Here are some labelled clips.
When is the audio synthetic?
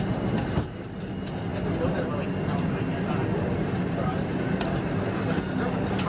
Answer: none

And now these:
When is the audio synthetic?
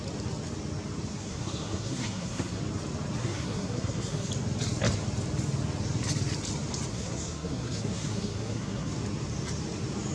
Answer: 1.1-2.6 (codec, SNAC); 3.2-4.3; 6.9-8.9